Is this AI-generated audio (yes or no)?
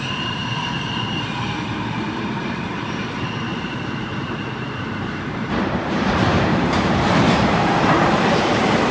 yes